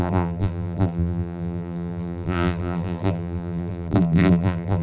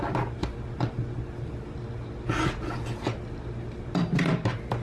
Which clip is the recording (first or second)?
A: second